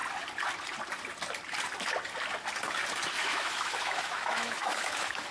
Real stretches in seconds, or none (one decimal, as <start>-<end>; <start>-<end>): 0.0-3.2